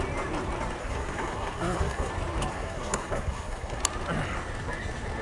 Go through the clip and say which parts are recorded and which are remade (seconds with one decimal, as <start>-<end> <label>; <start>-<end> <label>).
0.0-0.8 recorded; 0.8-2.1 remade; 2.1-2.5 recorded; 2.5-3.8 remade; 3.8-5.2 recorded